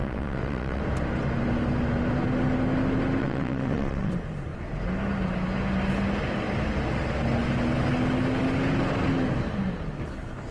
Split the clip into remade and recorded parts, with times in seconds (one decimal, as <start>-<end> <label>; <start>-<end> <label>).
0.0-0.8 remade; 0.8-3.2 recorded; 3.2-4.1 remade; 4.1-10.5 recorded